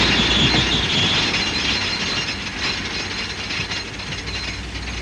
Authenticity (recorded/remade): recorded